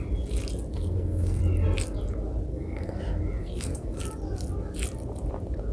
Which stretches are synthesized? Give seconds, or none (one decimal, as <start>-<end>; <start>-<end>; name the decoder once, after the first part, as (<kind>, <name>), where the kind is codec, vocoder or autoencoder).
0.7-1.4 (codec, SNAC); 2.5-3.0; 3.4-4.0